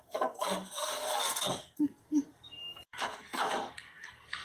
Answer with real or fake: fake